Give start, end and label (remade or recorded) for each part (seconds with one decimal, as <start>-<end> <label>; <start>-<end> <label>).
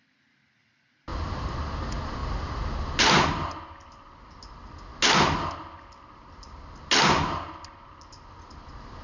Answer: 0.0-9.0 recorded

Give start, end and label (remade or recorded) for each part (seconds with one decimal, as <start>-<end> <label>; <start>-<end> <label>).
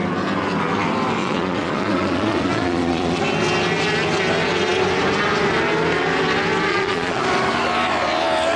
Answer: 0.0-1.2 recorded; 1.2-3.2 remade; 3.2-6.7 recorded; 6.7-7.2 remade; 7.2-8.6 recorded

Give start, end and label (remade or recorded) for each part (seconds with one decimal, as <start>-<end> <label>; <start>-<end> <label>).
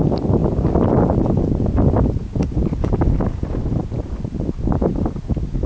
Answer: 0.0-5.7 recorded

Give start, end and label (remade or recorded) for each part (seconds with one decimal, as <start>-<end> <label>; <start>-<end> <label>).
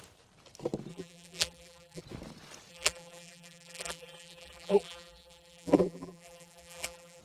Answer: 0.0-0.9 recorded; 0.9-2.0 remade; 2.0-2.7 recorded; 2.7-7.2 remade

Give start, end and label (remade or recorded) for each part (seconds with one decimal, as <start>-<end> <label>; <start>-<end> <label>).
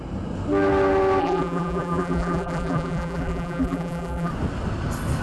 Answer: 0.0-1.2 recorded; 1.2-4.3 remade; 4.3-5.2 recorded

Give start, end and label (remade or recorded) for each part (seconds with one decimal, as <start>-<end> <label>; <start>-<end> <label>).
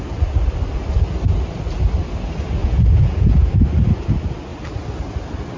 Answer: 0.0-2.6 recorded; 2.6-3.5 remade; 3.5-5.6 recorded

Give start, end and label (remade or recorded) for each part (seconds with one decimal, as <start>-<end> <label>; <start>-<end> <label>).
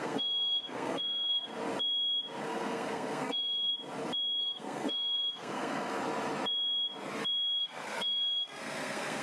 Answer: 0.0-1.5 remade; 1.5-2.4 recorded; 2.4-3.7 remade; 3.7-4.4 recorded; 4.4-6.0 remade; 6.0-7.6 recorded; 7.6-9.2 remade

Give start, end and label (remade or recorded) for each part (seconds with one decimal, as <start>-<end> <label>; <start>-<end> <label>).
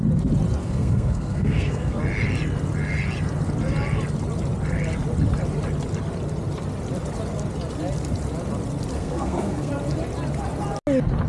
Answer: 0.0-0.6 recorded; 0.6-2.0 remade; 2.0-9.0 recorded; 9.0-9.7 remade; 9.7-11.3 recorded